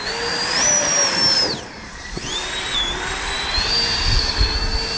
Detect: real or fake real